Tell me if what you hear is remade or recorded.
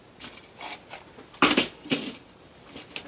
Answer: recorded